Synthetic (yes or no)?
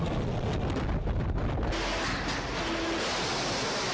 no